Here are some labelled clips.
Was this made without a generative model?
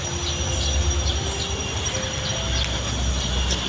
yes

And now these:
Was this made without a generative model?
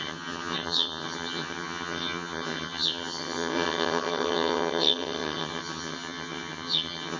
no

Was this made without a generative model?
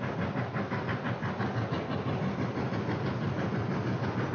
yes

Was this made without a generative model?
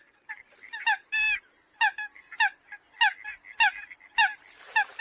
yes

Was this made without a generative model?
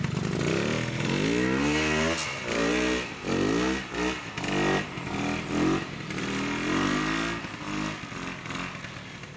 yes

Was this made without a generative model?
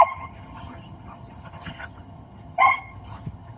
no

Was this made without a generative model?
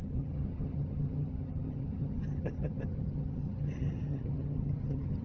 no